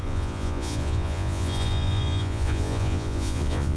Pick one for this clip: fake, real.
fake